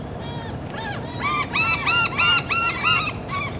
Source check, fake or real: real